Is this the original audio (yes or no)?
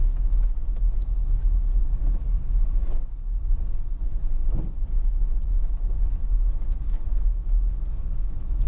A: yes